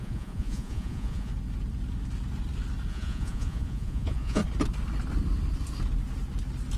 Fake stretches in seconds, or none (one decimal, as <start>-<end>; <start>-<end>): 0.0-1.3; 2.9-4.4